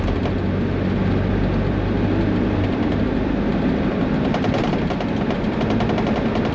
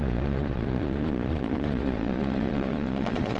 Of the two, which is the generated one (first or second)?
second